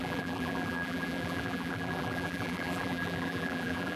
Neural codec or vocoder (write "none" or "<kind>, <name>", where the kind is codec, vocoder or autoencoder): vocoder, BigVGAN v2